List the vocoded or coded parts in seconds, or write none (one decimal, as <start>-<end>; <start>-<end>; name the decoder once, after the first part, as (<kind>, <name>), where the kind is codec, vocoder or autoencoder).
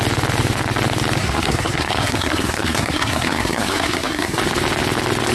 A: 1.2-4.4 (codec, SNAC)